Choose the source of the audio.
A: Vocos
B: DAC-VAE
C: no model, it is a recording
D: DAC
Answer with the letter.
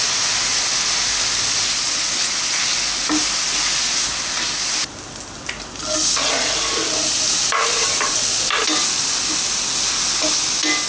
C